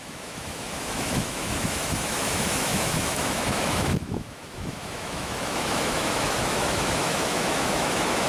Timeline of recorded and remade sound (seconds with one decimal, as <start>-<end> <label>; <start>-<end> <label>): 0.0-8.3 remade